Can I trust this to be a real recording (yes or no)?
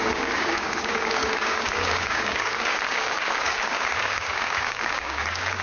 no